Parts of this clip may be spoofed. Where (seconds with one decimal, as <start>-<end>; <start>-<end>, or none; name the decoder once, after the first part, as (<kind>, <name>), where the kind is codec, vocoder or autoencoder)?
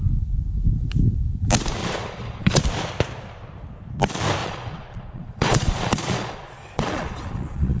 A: 1.8-2.6 (vocoder, Vocos); 4.4-7.8